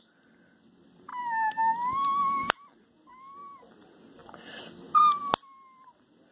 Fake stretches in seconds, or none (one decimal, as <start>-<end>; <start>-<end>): none